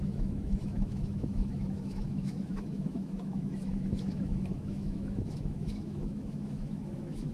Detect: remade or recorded remade